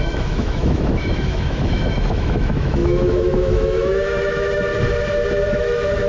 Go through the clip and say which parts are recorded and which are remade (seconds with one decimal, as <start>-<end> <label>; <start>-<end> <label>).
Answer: 0.0-4.7 remade; 4.7-5.5 recorded; 5.5-6.1 remade